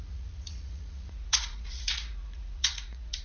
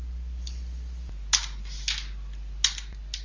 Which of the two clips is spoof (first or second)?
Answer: first